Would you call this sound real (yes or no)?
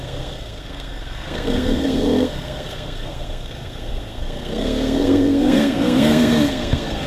no